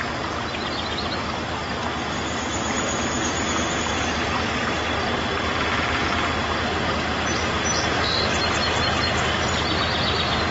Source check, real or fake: real